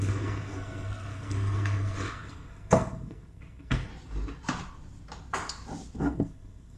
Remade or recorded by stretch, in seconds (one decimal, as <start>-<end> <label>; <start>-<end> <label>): 0.0-3.9 remade; 3.9-6.0 recorded; 6.0-6.8 remade